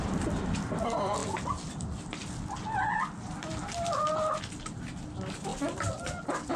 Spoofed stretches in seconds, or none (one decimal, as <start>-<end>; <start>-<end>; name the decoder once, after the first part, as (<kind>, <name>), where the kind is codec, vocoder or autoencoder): none